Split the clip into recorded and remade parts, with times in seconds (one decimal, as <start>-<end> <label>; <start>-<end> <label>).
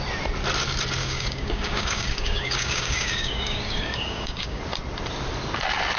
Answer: 0.0-1.0 recorded; 1.0-4.6 remade; 4.6-6.0 recorded